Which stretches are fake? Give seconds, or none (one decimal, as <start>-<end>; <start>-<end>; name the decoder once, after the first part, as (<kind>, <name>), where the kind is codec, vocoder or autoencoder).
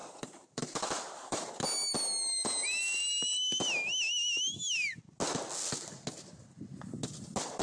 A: 0.0-1.5 (vocoder, BigVGAN v2)